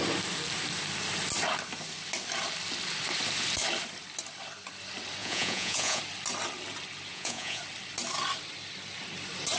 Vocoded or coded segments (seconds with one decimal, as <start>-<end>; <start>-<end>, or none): 5.2-6.0; 7.1-7.6